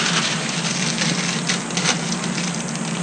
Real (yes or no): yes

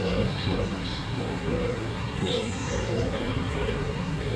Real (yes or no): no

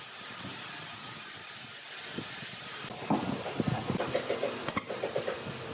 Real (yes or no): yes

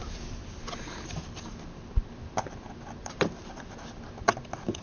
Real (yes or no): yes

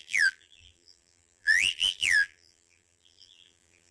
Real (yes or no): no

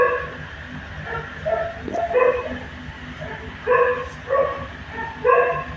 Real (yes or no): yes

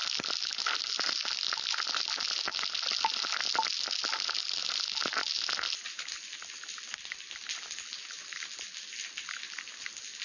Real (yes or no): yes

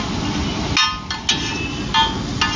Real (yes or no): yes